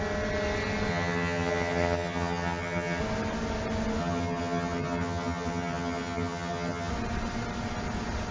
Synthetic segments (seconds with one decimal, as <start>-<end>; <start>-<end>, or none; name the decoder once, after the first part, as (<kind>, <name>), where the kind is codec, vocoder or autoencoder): 0.9-3.0 (vocoder, HiFi-GAN); 4.0-6.9